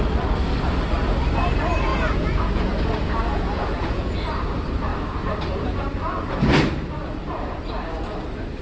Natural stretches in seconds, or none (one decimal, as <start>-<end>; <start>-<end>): 0.0-1.9; 2.7-3.3; 4.1-8.6